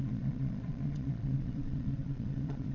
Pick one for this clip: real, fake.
fake